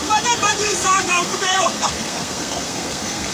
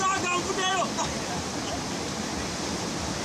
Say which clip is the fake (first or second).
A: first